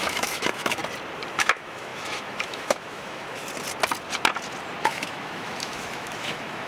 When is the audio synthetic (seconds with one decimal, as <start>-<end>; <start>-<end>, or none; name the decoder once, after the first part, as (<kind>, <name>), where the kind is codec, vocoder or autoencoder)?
0.0-0.8 (autoencoder, DAC-VAE); 1.4-3.4; 4.8-6.7